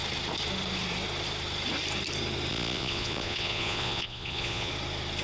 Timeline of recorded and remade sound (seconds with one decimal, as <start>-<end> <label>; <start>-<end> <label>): 0.0-2.5 recorded; 2.5-4.7 remade; 4.7-5.2 recorded